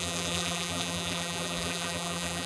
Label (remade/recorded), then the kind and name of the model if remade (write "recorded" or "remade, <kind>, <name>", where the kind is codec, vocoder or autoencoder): remade, vocoder, BigVGAN v2